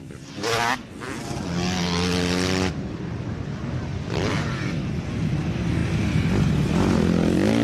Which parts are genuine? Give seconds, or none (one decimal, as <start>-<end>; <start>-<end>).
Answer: 0.0-3.9; 5.1-7.6